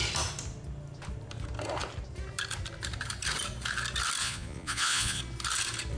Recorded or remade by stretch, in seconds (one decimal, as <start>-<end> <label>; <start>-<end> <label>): 0.0-4.2 recorded; 4.2-5.2 remade; 5.2-6.0 recorded